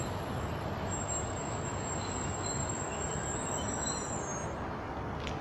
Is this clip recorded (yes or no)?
yes